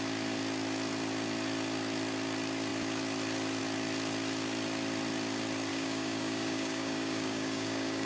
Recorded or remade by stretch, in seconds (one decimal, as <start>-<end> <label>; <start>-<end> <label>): 0.0-5.7 recorded; 5.7-8.1 remade